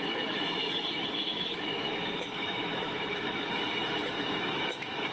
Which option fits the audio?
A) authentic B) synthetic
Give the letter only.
B